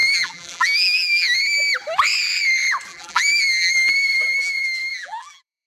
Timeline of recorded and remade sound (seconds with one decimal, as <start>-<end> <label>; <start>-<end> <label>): 0.0-1.4 remade; 1.4-2.9 recorded; 2.9-5.7 remade